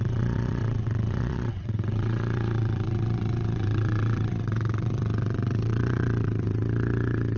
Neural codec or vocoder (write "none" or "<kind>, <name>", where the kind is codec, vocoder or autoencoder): vocoder, WaveNeXt